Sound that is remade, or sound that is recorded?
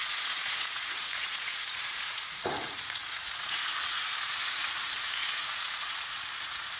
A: remade